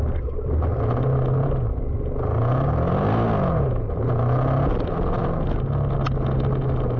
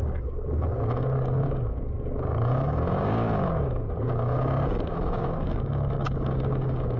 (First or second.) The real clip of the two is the first